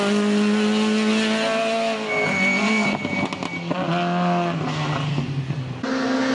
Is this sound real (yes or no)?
yes